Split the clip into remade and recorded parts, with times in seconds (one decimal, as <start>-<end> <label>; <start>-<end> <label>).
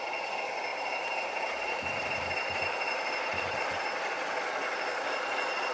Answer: 0.0-0.7 recorded; 0.7-3.6 remade; 3.6-5.7 recorded